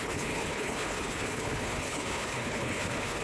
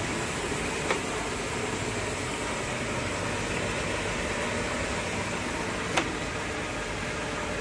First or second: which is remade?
first